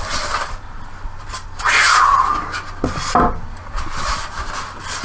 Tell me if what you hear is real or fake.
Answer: fake